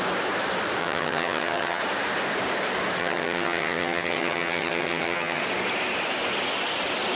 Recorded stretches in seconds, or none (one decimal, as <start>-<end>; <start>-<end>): 0.0-0.8; 1.8-3.0; 5.4-7.1